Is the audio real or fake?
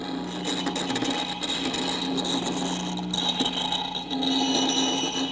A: real